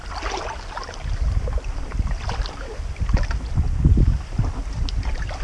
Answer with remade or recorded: recorded